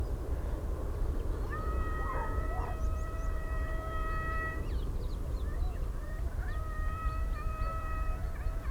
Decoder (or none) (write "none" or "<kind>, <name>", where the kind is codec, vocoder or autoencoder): vocoder, BigVGAN v2